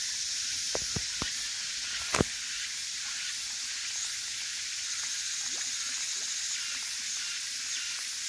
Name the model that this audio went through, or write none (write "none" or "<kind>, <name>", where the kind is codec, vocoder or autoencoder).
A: none